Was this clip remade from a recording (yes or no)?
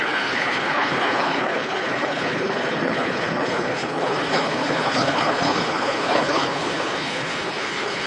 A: yes